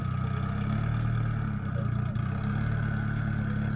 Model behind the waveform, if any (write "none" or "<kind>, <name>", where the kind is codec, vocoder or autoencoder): none